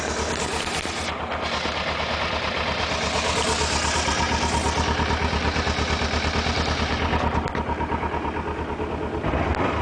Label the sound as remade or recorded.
recorded